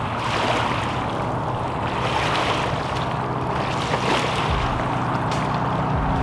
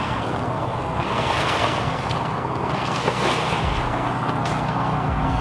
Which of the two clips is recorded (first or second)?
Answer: first